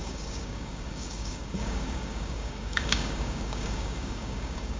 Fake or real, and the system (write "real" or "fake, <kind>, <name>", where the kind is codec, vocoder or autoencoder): fake, codec, DAC